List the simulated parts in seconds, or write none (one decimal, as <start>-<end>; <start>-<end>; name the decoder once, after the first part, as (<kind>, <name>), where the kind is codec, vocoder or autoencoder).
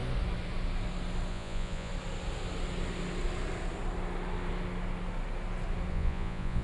1.3-1.9 (vocoder, Vocos); 5.9-6.6